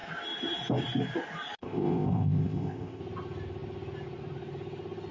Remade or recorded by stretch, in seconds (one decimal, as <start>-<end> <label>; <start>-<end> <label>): 0.0-1.6 recorded; 1.6-3.0 remade; 3.0-5.1 recorded